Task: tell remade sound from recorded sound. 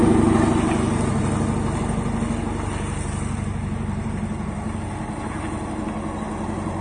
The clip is recorded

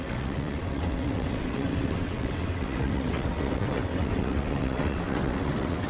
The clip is remade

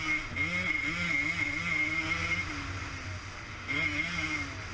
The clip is recorded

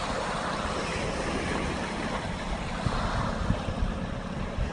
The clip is recorded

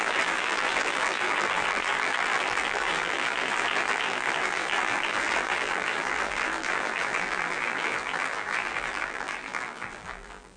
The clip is remade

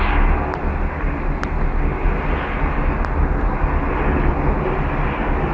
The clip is recorded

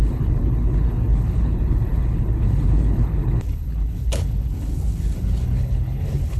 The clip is remade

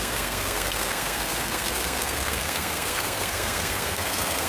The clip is remade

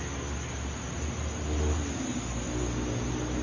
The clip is recorded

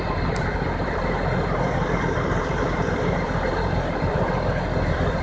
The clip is remade